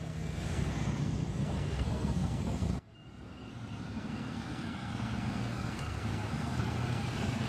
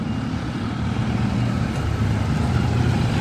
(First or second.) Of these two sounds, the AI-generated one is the first